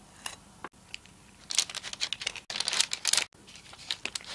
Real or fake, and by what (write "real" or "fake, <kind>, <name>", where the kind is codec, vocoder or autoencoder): real